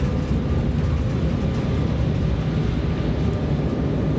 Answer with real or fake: real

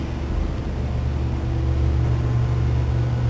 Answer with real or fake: real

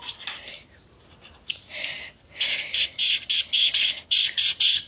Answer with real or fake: fake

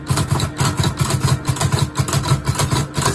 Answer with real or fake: real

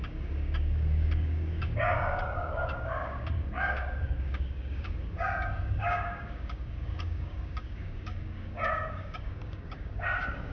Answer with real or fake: fake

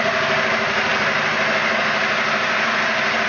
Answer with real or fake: real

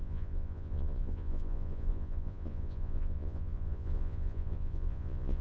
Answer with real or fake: fake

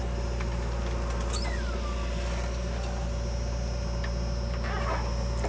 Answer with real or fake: real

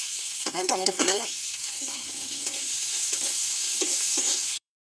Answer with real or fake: fake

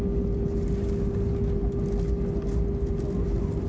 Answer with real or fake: real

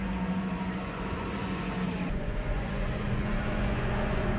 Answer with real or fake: fake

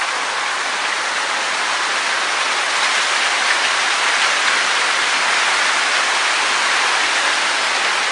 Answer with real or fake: real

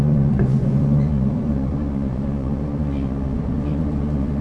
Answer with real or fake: fake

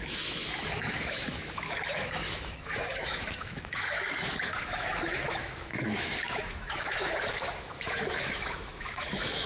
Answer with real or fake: fake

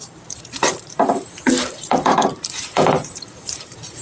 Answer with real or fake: fake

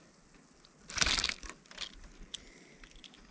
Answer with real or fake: real